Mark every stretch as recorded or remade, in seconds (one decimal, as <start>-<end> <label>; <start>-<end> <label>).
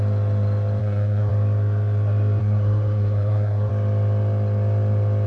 0.0-0.8 recorded; 0.8-1.3 remade; 1.3-2.4 recorded; 2.4-3.7 remade; 3.7-5.3 recorded